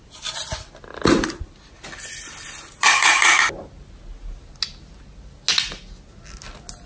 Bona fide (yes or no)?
yes